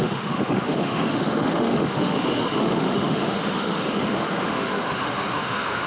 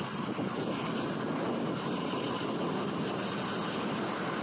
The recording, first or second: second